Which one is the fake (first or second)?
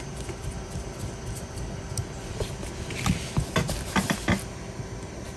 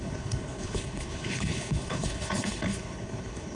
second